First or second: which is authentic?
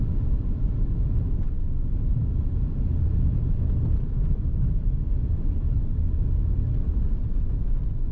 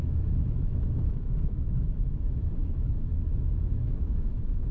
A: first